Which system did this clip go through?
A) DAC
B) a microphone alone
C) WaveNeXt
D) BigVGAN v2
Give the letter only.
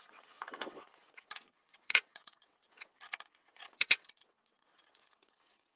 C